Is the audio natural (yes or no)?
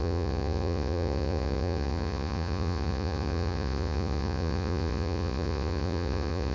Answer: no